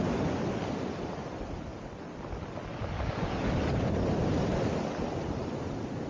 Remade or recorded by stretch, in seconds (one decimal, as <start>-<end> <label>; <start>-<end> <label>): 0.0-6.1 recorded